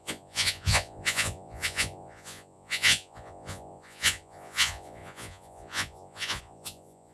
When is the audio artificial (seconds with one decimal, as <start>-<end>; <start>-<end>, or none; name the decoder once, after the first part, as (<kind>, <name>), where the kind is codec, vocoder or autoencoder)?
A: 0.0-7.1 (vocoder, Vocos)